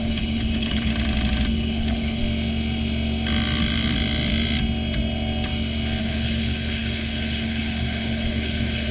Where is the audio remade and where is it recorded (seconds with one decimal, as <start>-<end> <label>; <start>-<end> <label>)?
0.0-0.9 remade; 0.9-1.5 recorded; 1.5-2.2 remade; 2.2-6.0 recorded; 6.0-8.9 remade